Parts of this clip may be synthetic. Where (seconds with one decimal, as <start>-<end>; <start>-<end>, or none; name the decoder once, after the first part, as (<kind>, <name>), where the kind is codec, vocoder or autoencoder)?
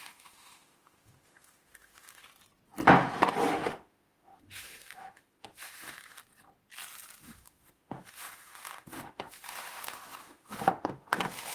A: 0.0-2.3 (autoencoder, DAC-VAE); 3.5-6.2; 7.2-11.5